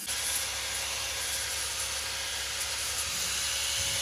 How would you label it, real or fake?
real